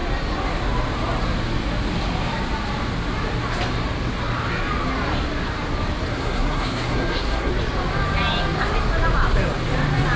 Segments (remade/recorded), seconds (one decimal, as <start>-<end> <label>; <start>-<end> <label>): 0.0-6.1 recorded; 6.1-7.5 remade; 7.5-10.2 recorded